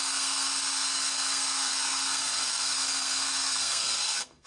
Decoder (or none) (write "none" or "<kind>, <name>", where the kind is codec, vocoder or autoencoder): codec, SNAC